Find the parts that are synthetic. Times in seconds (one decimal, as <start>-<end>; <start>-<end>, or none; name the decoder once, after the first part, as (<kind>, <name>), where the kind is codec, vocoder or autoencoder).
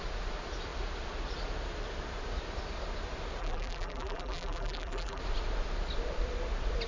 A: 3.4-5.2 (vocoder, BigVGAN v2)